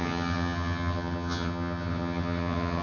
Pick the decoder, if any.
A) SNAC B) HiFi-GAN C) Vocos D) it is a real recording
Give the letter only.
B